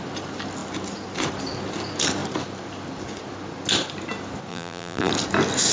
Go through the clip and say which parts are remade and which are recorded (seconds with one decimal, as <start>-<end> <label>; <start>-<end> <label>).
0.0-4.5 recorded; 4.5-5.1 remade; 5.1-5.7 recorded

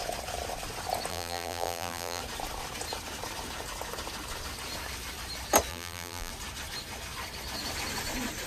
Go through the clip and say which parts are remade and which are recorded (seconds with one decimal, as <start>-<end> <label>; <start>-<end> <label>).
0.0-1.1 recorded; 1.1-2.2 remade; 2.2-5.7 recorded; 5.7-6.3 remade; 6.3-8.5 recorded

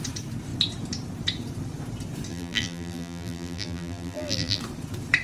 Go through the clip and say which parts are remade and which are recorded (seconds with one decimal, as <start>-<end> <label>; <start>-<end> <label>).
0.0-2.3 recorded; 2.3-4.6 remade; 4.6-5.2 recorded

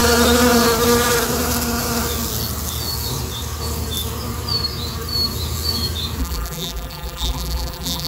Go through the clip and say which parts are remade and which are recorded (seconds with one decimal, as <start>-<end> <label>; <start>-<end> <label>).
0.0-6.2 recorded; 6.2-8.1 remade

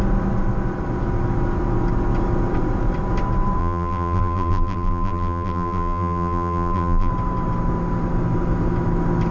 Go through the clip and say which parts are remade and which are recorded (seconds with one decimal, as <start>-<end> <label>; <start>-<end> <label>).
0.0-3.6 recorded; 3.6-7.1 remade; 7.1-9.3 recorded

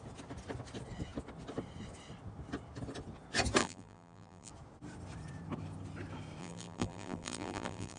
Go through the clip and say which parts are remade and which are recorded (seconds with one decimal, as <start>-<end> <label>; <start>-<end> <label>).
0.0-3.6 recorded; 3.6-4.5 remade; 4.5-6.4 recorded; 6.4-8.0 remade